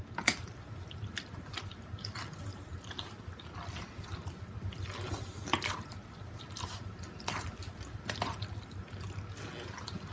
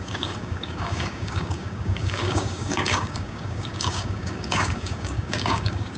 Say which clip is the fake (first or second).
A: second